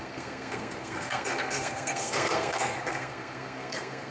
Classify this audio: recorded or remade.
remade